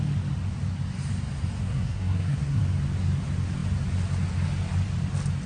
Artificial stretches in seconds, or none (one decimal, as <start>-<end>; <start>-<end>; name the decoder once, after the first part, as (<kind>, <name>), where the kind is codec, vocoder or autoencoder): 1.6-2.6 (codec, SNAC)